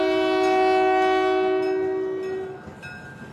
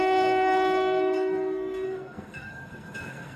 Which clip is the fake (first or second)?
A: second